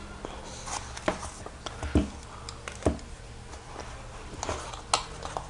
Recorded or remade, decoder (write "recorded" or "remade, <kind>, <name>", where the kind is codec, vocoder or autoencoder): recorded